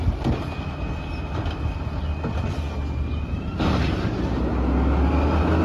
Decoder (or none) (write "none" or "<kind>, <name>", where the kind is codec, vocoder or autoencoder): none